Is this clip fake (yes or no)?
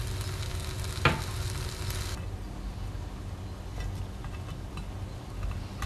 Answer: no